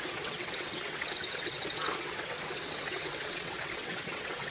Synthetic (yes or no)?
yes